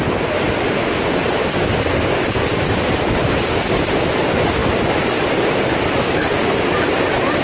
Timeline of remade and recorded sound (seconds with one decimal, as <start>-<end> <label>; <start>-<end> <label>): 0.0-1.4 recorded; 1.4-2.4 remade; 2.4-7.4 recorded